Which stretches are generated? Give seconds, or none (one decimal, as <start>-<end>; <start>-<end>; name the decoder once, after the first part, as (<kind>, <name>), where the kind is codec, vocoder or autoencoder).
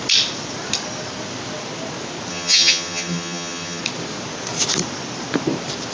2.3-3.8 (vocoder, HiFi-GAN)